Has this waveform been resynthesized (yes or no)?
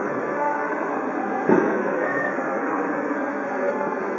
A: yes